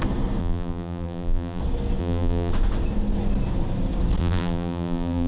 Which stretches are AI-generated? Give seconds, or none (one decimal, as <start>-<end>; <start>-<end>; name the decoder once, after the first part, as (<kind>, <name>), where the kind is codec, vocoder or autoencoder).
0.4-1.6 (vocoder, BigVGAN v2); 2.0-2.5; 4.2-5.3